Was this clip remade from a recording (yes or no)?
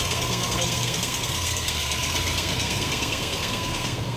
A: yes